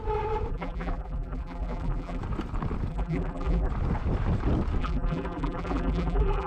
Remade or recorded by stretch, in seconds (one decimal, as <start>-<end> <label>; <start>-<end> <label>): 0.0-0.5 recorded; 0.5-2.2 remade; 2.2-2.9 recorded; 2.9-3.7 remade; 3.7-4.8 recorded; 4.8-6.5 remade